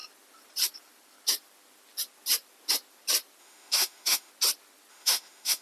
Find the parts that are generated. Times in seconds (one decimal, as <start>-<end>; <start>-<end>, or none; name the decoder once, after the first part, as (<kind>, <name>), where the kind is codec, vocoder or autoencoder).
3.4-4.3 (autoencoder, DAC-VAE); 4.9-5.6